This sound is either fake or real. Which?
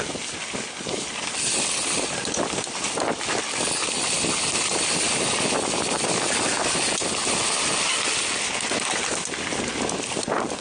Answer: real